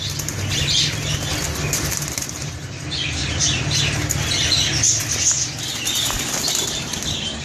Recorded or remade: recorded